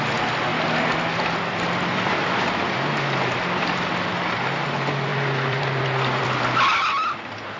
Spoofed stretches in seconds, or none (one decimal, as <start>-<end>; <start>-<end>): 0.5-3.9; 5.1-6.9